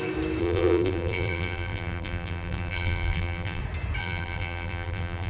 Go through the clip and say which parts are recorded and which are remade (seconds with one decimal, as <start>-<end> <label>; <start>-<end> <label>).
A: 0.0-0.4 recorded; 0.4-3.6 remade; 3.6-4.0 recorded; 4.0-5.3 remade